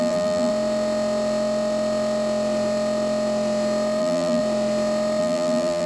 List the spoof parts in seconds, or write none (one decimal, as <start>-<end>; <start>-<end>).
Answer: 0.0-0.5; 4.0-4.4; 5.2-5.9